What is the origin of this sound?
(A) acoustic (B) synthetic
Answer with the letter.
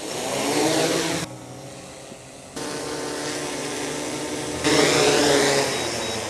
A